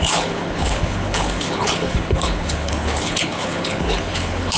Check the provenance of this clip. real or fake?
fake